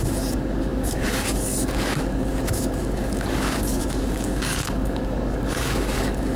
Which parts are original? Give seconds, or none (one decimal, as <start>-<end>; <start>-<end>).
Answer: none

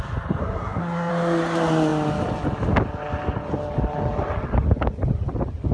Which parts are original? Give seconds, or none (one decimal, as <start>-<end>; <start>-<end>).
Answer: 0.0-0.4; 1.1-5.7

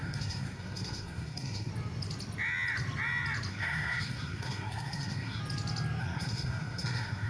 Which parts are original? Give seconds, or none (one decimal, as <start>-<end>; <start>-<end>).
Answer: 1.7-3.5; 5.4-6.0